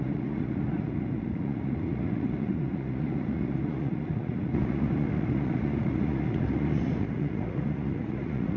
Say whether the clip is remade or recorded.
remade